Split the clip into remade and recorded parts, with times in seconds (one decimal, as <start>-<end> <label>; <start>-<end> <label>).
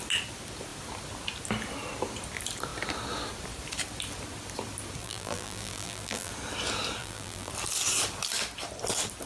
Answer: 0.0-5.0 recorded; 5.0-6.3 remade; 6.3-7.0 recorded; 7.0-7.5 remade; 7.5-9.3 recorded